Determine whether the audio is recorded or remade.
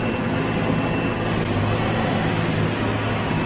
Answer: recorded